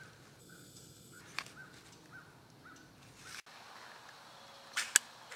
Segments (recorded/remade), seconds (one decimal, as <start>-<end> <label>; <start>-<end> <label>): 0.0-0.4 recorded; 0.4-1.2 remade; 1.2-5.4 recorded